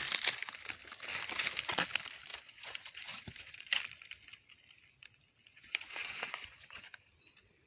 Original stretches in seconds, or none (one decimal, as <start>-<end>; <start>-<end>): 0.0-2.3; 3.8-5.5; 6.9-7.7